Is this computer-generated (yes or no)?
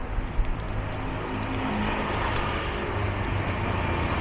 no